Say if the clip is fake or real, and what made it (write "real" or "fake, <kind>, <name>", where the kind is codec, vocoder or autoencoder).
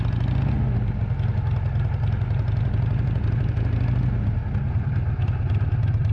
real